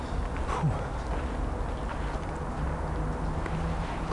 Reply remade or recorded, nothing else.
recorded